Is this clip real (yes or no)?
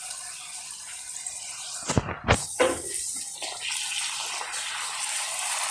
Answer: yes